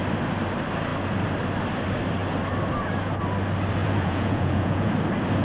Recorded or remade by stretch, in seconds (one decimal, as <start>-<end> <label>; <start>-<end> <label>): 0.0-3.8 recorded; 3.8-4.9 remade; 4.9-5.4 recorded